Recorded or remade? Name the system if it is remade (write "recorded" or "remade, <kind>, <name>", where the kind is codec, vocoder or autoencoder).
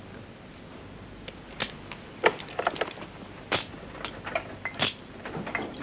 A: recorded